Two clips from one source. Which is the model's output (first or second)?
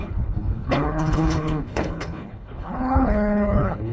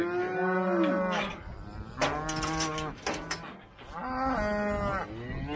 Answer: first